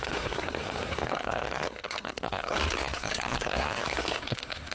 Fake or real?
fake